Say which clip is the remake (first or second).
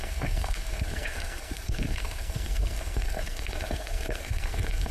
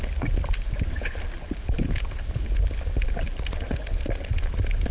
first